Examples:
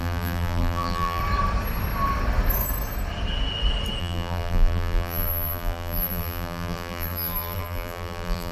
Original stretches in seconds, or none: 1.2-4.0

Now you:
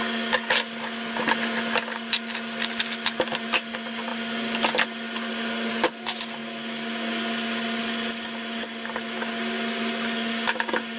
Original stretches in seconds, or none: 0.0-11.0

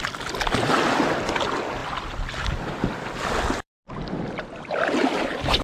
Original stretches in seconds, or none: 0.0-1.8

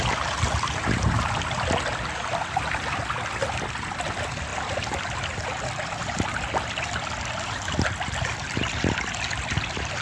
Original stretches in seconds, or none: 0.0-10.0